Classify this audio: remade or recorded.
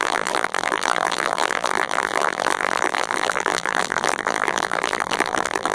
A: remade